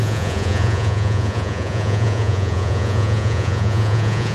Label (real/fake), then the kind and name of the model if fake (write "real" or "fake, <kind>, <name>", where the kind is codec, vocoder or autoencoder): fake, vocoder, Vocos